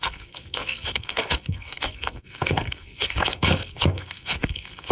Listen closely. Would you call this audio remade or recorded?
remade